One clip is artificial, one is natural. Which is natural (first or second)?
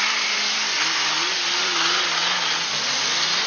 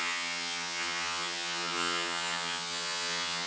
first